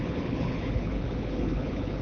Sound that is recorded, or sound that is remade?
remade